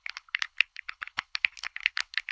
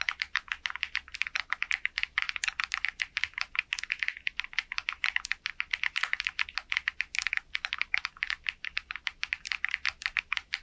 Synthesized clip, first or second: first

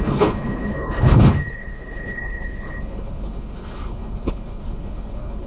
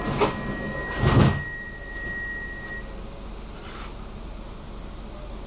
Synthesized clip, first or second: first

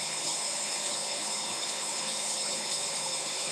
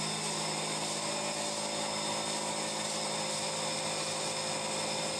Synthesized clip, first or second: first